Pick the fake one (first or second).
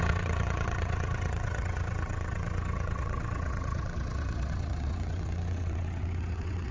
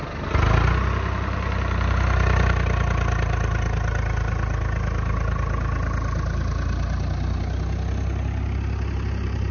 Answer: first